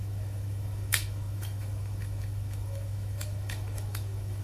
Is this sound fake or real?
fake